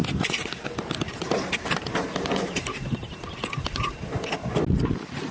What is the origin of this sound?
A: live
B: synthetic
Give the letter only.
A